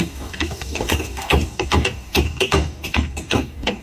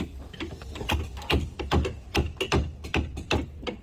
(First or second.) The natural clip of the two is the second